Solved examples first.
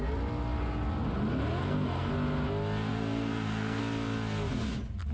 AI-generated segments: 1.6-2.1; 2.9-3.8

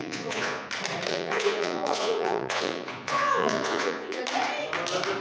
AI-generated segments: 0.0-0.7; 1.1-4.2

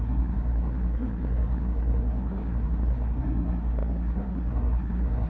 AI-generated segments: 0.0-5.3